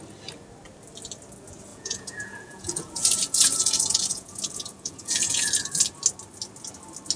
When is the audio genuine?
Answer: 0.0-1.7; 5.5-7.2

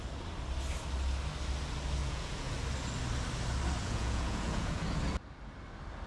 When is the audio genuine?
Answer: 0.0-2.0; 2.5-3.8; 4.8-6.1